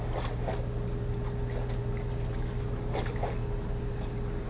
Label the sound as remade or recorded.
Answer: recorded